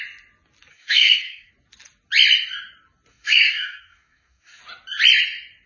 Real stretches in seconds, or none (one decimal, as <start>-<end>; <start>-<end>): 0.0-0.7; 1.5-3.1; 4.6-5.7